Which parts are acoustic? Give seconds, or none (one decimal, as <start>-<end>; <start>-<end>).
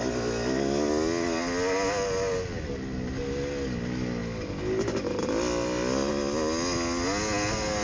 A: 0.0-7.8